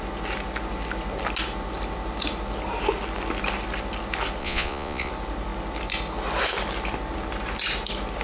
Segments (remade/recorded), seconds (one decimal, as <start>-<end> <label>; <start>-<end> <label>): 0.0-4.4 recorded; 4.4-5.1 remade; 5.1-8.2 recorded